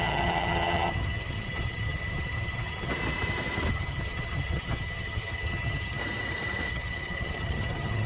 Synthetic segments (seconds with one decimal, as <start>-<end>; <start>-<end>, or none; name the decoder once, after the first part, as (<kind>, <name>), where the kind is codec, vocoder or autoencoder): 0.0-2.9 (vocoder, HiFi-GAN); 3.7-6.0; 6.7-8.1